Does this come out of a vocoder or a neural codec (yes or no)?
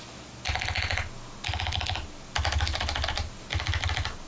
no